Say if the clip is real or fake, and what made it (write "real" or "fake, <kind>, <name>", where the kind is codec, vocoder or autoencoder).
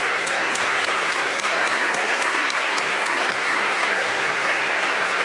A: fake, codec, SNAC